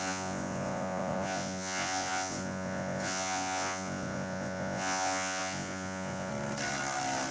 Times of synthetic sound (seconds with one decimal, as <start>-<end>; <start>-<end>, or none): 0.0-6.3